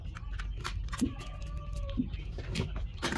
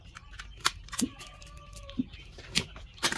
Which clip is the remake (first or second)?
second